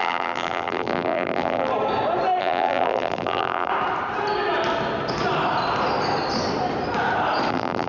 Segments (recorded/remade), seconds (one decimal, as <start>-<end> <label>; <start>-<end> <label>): 0.0-1.7 remade; 1.7-2.4 recorded; 2.4-3.7 remade; 3.7-7.5 recorded; 7.5-7.9 remade